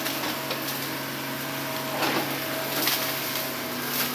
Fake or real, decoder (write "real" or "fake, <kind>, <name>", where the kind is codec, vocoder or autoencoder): real